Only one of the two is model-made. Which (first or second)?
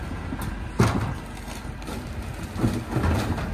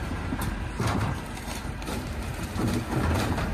second